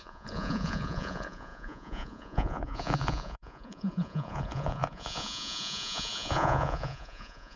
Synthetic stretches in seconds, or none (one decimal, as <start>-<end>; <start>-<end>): 0.0-7.6